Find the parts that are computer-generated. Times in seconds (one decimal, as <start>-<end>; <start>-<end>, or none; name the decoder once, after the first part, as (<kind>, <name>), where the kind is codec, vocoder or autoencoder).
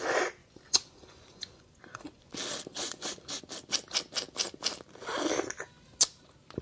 0.4-2.3 (vocoder, Vocos); 2.7-3.4